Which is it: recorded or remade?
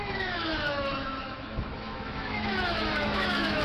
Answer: remade